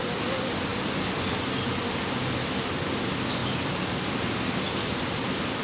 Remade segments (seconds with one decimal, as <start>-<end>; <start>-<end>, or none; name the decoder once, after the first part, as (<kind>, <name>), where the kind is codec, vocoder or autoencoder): 3.4-4.1 (vocoder, BigVGAN v2)